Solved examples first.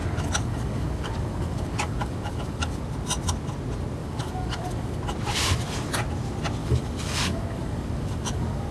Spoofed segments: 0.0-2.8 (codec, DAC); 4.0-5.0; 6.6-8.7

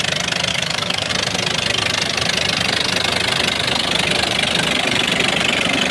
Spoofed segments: 0.5-1.1 (codec, DAC)

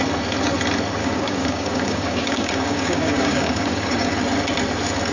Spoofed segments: 1.0-4.1 (codec, DAC)

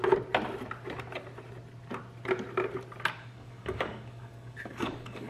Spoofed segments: 3.1-5.3 (codec, DAC)

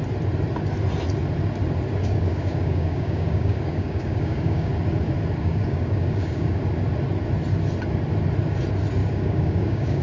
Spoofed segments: 2.0-4.7 (codec, DAC); 5.4-6.6; 9.0-10.0

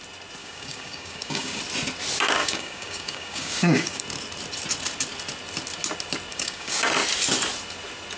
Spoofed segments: 0.4-1.6 (codec, DAC); 2.4-4.0; 6.3-6.8

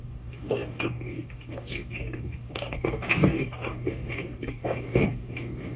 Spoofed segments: 0.0-5.8 (codec, DAC)